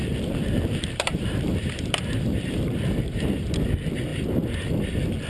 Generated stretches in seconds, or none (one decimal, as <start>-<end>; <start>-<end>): 0.0-3.2